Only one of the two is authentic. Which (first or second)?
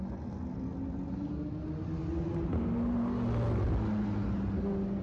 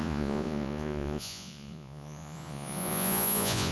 first